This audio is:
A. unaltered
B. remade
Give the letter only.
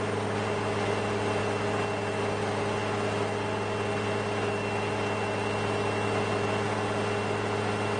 A